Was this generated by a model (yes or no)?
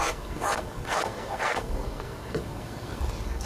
yes